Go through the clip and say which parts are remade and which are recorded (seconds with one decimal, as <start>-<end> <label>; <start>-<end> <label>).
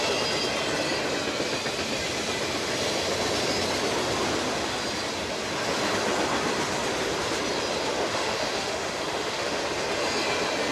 0.0-8.1 recorded; 8.1-9.6 remade; 9.6-10.7 recorded